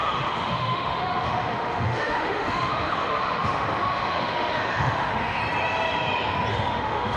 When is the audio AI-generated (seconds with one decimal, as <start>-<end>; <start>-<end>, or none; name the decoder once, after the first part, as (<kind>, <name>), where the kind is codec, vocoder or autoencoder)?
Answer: 0.0-5.4 (autoencoder, DAC-VAE); 6.5-7.2